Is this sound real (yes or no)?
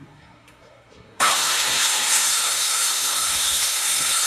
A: no